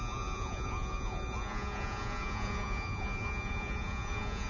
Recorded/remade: remade